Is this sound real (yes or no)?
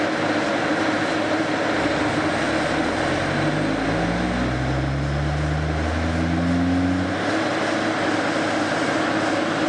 yes